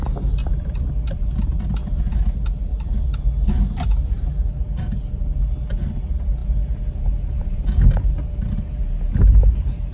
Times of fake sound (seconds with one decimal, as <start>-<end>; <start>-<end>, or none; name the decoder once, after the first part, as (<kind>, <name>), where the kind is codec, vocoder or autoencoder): 6.4-8.5 (vocoder, BigVGAN v2)